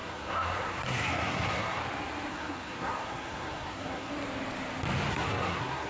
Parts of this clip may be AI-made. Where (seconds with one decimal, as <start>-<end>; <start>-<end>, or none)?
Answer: 0.0-1.8; 2.3-4.1; 5.1-5.9